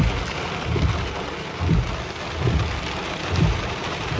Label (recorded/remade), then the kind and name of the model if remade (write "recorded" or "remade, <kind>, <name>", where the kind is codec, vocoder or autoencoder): recorded